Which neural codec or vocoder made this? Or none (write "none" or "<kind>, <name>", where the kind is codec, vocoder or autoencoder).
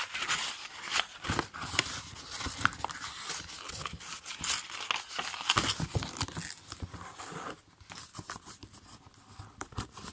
none